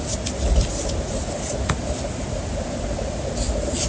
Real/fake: real